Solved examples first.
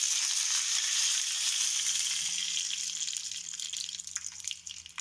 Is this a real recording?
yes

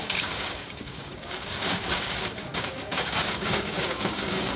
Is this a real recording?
no